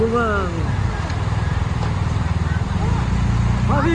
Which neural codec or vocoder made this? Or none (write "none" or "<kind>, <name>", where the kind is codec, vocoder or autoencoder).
none